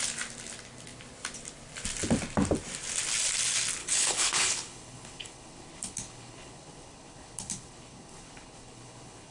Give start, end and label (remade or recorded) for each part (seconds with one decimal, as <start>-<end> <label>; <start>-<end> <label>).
0.0-3.8 recorded; 3.8-9.3 remade